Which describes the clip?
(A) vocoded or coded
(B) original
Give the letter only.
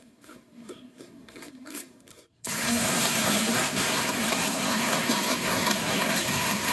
A